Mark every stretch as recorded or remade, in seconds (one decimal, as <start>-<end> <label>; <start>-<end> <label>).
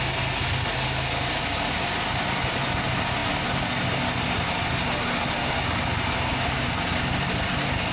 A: 0.0-7.9 recorded